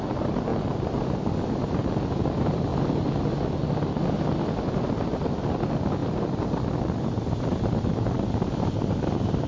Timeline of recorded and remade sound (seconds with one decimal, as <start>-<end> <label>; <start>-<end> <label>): 0.0-0.5 recorded; 0.5-1.5 remade; 1.5-6.0 recorded; 6.0-8.2 remade; 8.2-9.5 recorded